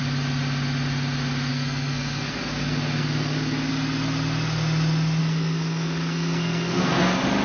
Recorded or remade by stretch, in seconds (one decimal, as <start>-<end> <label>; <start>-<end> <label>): 0.0-1.5 recorded; 1.5-3.7 remade; 3.7-5.2 recorded; 5.2-7.0 remade; 7.0-7.4 recorded